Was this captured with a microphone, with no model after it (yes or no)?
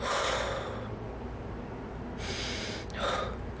yes